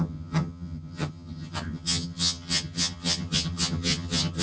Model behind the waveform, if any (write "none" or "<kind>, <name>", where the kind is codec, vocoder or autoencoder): vocoder, HiFi-GAN